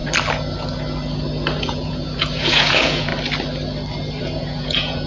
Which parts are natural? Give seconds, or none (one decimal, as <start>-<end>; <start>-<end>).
0.0-1.6; 3.1-4.2